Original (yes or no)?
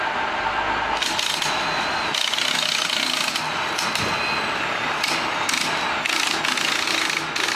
yes